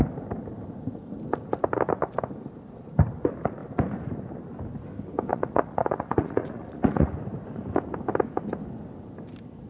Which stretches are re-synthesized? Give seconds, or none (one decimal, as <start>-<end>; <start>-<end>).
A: 5.3-7.1